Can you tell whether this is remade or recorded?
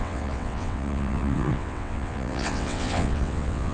remade